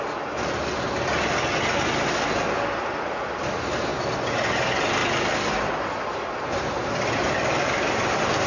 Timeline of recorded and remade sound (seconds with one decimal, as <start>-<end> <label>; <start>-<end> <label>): 0.0-8.5 recorded